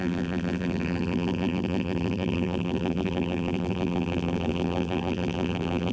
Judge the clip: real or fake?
fake